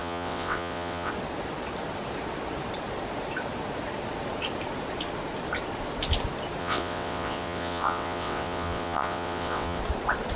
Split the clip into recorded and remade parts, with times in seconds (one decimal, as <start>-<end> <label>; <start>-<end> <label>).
0.0-1.1 remade; 1.1-6.6 recorded; 6.6-9.8 remade; 9.8-10.4 recorded